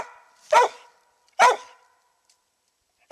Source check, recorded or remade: recorded